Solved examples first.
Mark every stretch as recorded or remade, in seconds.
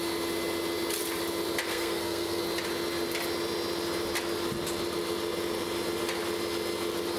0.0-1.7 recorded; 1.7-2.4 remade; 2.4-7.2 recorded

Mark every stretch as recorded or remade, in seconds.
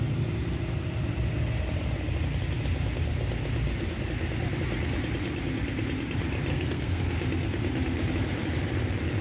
0.0-6.5 recorded; 6.5-7.0 remade; 7.0-9.2 recorded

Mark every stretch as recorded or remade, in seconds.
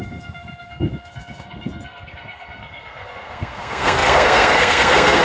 0.0-5.2 remade